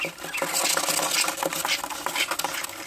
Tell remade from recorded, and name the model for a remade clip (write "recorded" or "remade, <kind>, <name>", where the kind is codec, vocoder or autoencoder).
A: recorded